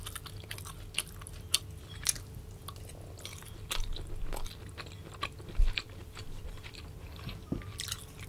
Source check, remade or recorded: recorded